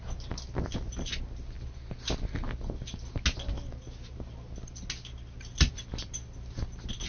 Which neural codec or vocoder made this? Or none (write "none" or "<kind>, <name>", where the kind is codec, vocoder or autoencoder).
none